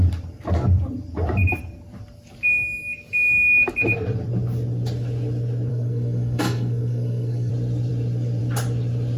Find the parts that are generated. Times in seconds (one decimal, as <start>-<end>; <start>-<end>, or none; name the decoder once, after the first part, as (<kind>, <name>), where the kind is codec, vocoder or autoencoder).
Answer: 5.7-7.5 (codec, SNAC)